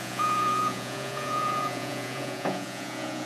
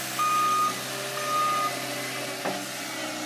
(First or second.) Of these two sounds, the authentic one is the second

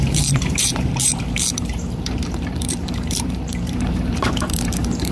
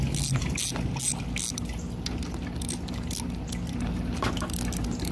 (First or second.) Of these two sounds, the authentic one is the second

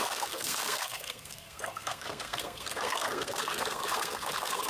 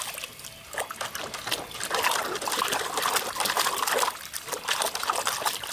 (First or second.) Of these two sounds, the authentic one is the second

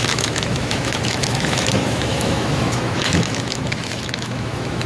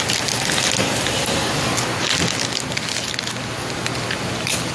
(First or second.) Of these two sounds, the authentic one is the second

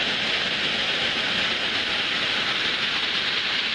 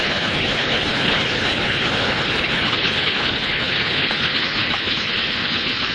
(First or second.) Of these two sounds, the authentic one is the first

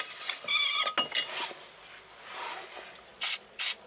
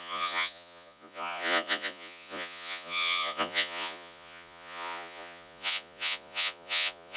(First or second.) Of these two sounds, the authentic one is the first